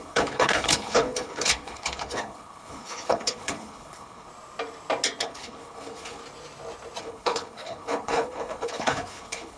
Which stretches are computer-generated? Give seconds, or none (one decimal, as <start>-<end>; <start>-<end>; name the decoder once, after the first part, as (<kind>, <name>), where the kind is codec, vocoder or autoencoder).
0.0-4.3 (codec, HILCodec); 5.2-6.2; 7.0-9.6